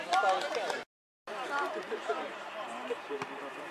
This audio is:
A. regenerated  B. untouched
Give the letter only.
B